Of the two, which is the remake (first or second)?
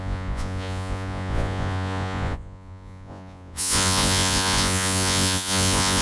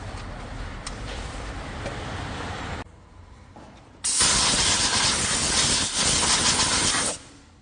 first